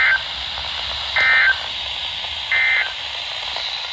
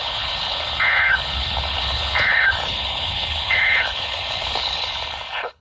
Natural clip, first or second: first